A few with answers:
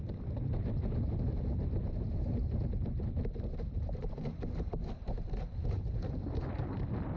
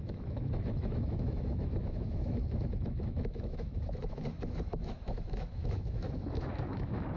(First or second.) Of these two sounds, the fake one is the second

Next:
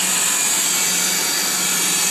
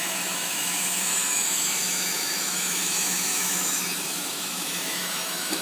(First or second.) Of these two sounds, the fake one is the second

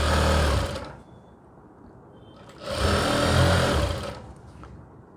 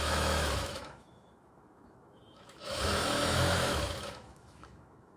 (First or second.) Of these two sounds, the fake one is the second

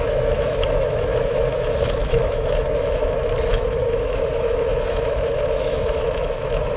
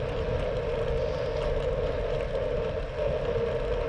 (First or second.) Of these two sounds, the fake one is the first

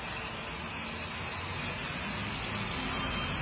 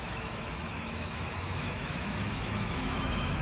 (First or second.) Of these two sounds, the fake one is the second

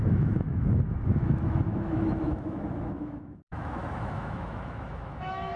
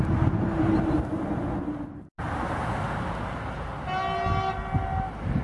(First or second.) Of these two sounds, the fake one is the first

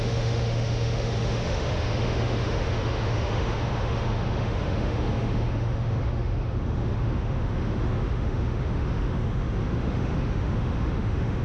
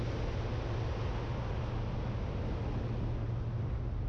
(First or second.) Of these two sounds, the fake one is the first